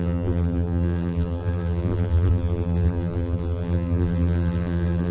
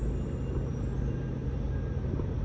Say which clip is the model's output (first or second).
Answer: first